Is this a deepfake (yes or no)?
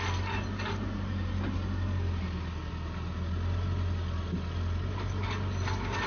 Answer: no